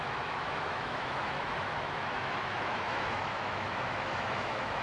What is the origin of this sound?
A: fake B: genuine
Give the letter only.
A